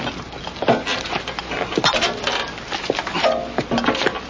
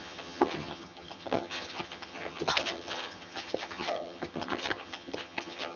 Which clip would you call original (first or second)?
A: first